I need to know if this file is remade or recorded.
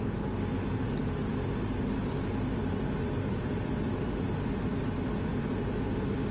recorded